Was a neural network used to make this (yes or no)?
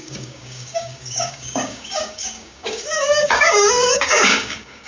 yes